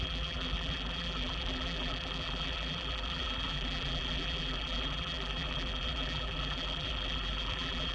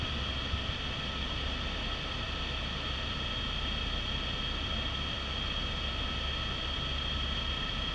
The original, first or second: second